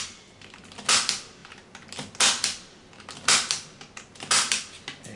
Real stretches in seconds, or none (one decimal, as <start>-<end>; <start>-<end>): 0.0-5.2